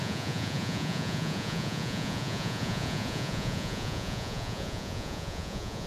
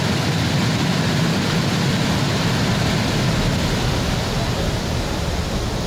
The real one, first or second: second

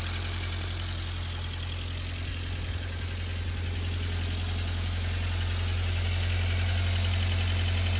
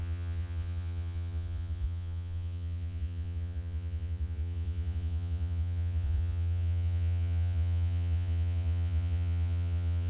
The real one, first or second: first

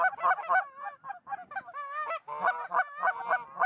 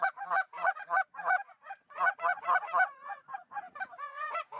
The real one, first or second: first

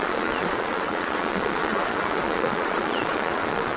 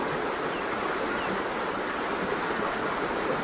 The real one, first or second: second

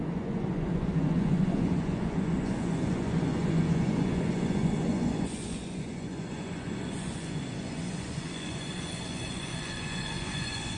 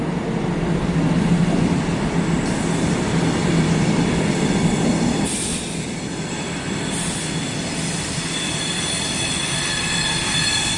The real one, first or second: second